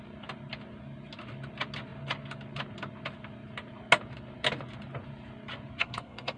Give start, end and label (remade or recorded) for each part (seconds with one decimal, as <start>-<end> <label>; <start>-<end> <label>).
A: 0.0-5.8 recorded; 5.8-6.4 remade